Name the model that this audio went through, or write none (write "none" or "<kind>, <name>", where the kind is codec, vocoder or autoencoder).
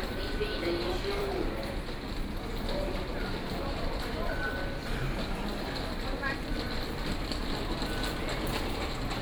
vocoder, BigVGAN v2